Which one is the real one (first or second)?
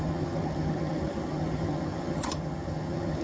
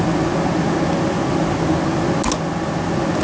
second